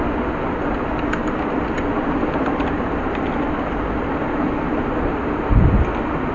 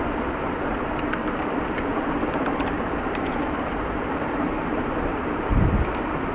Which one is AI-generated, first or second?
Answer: second